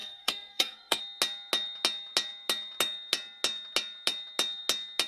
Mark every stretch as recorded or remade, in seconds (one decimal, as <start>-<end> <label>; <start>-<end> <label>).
0.0-1.0 remade; 1.0-5.1 recorded